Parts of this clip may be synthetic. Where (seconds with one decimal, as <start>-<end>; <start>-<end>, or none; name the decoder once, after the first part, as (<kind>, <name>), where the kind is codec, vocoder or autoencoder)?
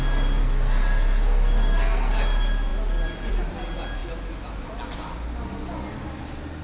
0.4-2.1 (codec, SNAC)